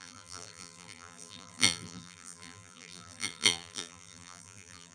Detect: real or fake fake